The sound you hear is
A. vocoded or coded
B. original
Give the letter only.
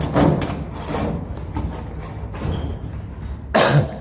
B